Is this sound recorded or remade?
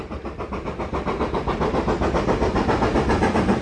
recorded